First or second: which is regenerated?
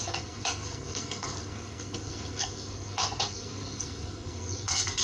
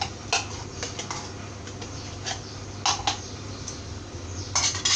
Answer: first